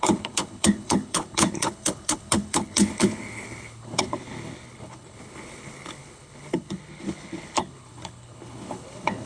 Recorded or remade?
remade